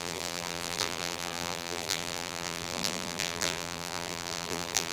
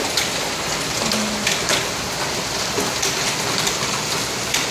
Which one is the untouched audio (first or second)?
second